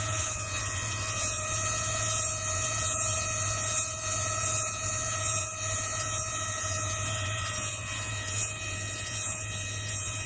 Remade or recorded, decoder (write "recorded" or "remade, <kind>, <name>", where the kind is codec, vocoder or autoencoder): remade, vocoder, Vocos